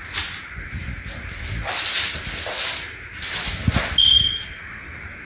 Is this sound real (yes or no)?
yes